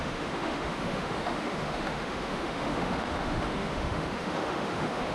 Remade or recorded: remade